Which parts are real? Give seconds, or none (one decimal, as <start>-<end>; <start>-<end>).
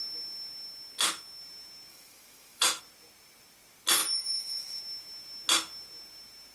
0.0-1.9; 2.8-4.0; 4.8-6.5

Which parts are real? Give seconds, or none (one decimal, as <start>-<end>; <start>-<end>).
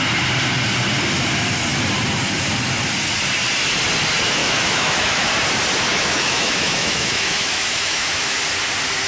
0.0-4.4; 5.3-5.9; 8.4-9.1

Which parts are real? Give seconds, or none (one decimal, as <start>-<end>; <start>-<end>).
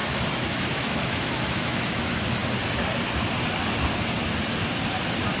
2.0-5.4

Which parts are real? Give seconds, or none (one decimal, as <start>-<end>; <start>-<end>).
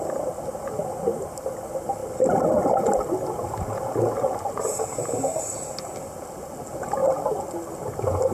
0.0-8.3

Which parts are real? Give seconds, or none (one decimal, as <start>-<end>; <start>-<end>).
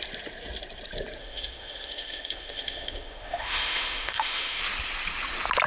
0.0-1.2; 4.6-5.7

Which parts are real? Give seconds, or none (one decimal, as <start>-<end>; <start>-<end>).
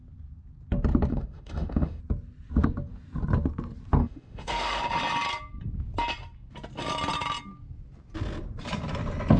0.0-1.1; 2.0-4.0; 4.8-9.4